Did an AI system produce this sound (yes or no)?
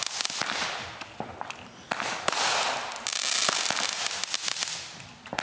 no